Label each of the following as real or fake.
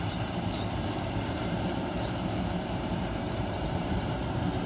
fake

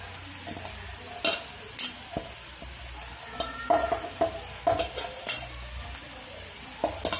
real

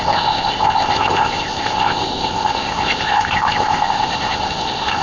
fake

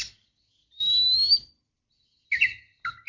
real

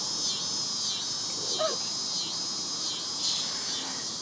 real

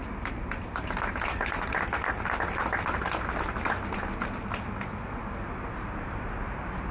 real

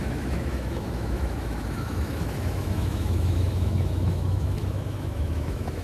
fake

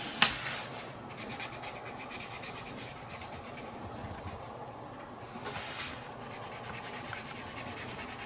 real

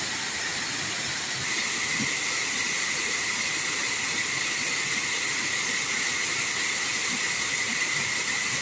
real